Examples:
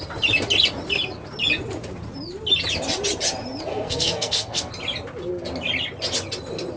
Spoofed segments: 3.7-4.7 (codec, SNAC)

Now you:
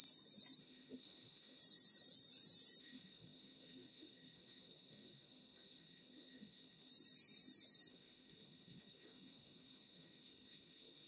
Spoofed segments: 0.6-1.6 (codec, SNAC); 2.8-6.9; 7.9-11.1

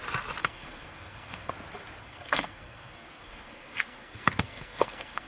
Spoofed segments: 0.4-1.5 (codec, SNAC); 2.0-5.3

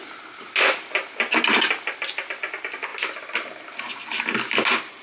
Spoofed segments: none

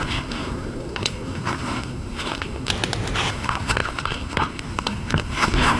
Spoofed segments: 0.0-2.7 (codec, SNAC); 3.3-5.8

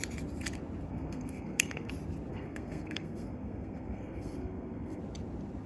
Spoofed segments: 0.9-1.9 (codec, SNAC); 2.3-5.0

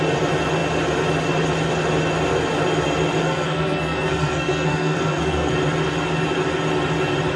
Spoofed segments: 3.2-5.5 (codec, SNAC)